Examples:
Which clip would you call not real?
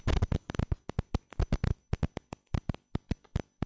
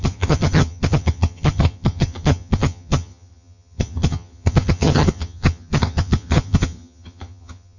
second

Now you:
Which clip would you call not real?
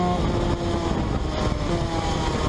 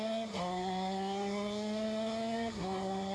second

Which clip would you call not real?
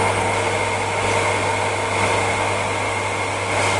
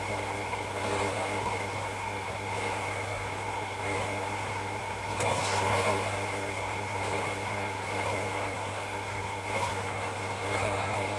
second